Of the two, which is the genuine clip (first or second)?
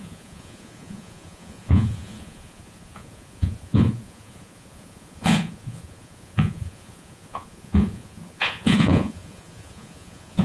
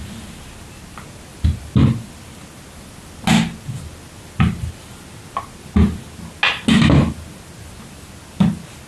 second